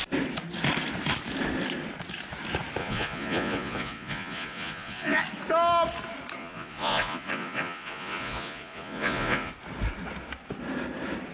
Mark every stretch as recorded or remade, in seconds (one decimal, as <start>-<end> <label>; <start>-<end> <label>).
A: 0.0-2.8 recorded; 2.8-5.2 remade; 5.2-6.4 recorded; 6.4-9.5 remade; 9.5-11.3 recorded